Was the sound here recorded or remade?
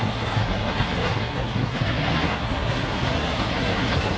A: remade